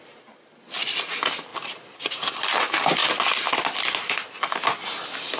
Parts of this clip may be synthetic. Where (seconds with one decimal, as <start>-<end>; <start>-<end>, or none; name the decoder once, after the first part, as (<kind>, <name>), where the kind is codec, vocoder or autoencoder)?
none